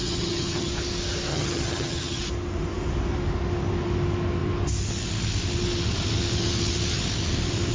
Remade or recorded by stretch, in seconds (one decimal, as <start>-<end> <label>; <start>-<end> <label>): 0.0-0.7 remade; 0.7-1.3 recorded; 1.3-2.2 remade; 2.2-7.7 recorded